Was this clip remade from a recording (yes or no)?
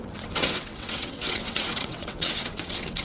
yes